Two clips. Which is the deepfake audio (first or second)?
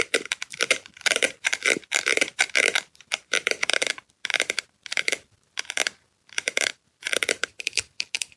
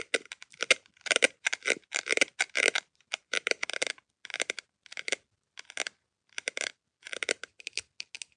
first